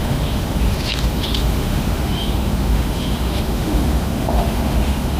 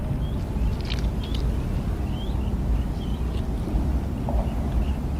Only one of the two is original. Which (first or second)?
second